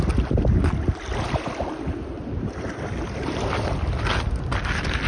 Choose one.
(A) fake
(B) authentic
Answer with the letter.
B